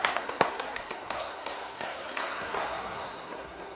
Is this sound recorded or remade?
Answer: remade